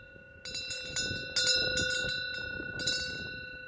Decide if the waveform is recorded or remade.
recorded